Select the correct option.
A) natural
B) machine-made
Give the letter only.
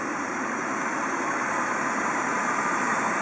B